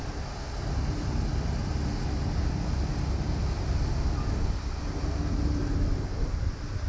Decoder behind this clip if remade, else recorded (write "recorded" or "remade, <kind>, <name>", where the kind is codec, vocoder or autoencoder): recorded